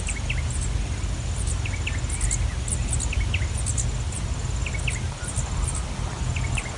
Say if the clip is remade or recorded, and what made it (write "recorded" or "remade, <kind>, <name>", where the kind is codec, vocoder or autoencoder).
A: recorded